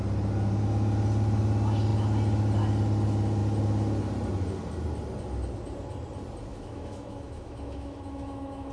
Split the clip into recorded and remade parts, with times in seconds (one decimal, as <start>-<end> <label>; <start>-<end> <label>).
0.0-6.5 recorded; 6.5-8.7 remade